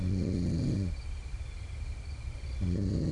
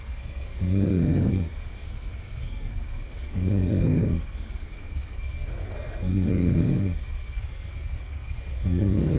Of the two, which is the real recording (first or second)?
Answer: first